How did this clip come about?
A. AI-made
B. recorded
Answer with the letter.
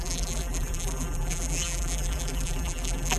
A